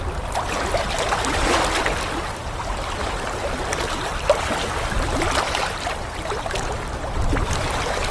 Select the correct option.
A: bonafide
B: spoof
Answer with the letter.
A